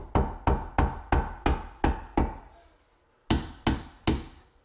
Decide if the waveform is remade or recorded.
recorded